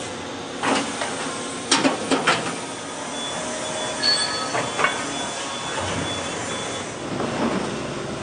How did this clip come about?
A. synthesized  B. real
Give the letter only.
B